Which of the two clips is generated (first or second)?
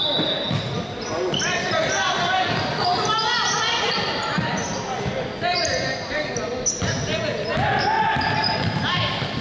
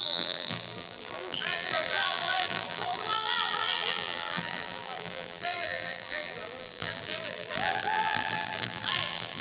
second